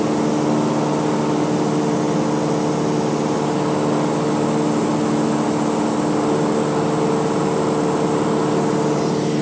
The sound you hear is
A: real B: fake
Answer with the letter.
A